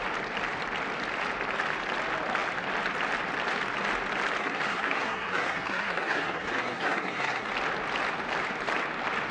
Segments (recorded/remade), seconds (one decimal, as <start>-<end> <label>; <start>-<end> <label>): 0.0-4.4 recorded; 4.4-7.5 remade; 7.5-9.3 recorded